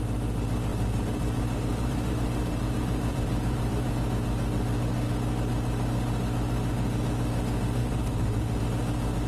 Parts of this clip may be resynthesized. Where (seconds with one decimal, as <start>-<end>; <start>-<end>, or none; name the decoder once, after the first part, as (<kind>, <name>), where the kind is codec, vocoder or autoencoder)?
0.7-3.9 (vocoder, BigVGAN v2); 7.8-8.6